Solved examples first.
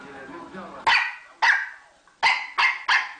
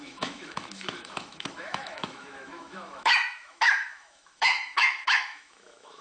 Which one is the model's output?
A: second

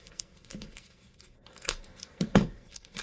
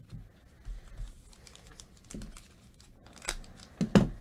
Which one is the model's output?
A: first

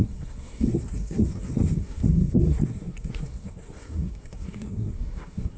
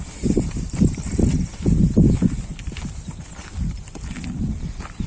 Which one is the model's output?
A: first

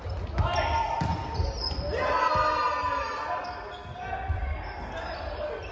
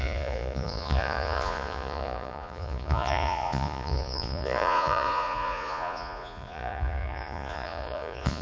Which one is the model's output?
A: second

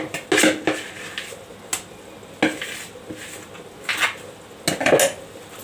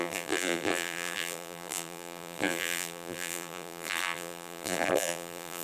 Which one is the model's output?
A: second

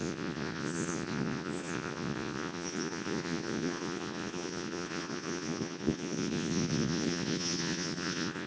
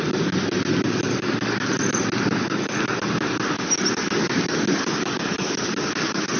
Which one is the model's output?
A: first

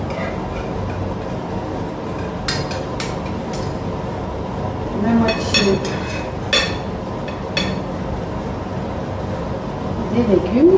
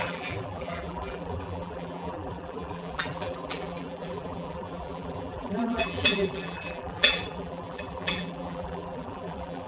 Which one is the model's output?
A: second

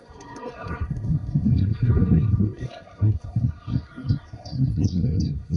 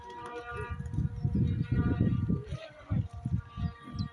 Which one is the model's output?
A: first